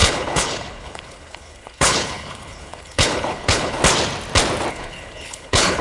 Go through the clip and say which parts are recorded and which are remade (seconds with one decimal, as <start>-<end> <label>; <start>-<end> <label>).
0.0-3.8 remade; 3.8-4.7 recorded; 4.7-5.8 remade